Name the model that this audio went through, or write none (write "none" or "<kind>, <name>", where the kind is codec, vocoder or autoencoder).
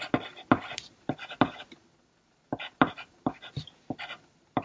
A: vocoder, BigVGAN v2